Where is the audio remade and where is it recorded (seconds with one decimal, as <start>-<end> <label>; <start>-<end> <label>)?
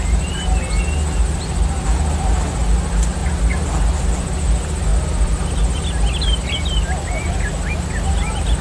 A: 0.0-8.6 recorded